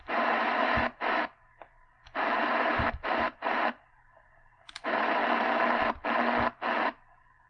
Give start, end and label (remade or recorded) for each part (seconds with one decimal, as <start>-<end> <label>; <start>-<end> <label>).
0.0-1.9 remade; 1.9-2.5 recorded; 2.5-5.2 remade; 5.2-7.5 recorded